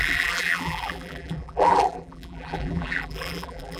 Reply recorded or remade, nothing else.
remade